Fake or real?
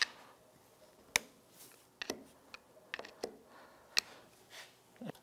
real